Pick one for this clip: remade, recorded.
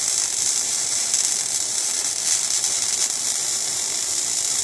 remade